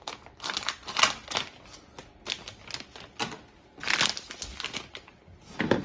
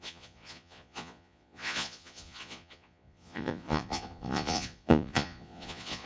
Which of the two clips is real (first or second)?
first